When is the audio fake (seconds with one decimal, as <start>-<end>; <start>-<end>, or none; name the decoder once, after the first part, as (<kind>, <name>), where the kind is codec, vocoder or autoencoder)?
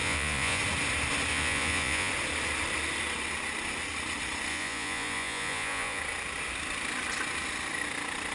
0.0-0.6 (vocoder, Vocos); 1.3-2.1; 4.5-6.0